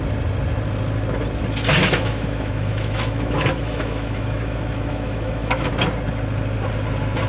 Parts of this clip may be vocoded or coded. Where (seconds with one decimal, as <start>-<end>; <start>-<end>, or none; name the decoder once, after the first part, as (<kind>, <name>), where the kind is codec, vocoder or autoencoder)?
1.8-5.7 (autoencoder, DAC-VAE)